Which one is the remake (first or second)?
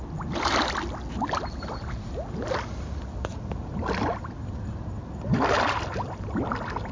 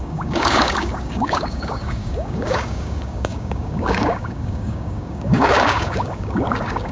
second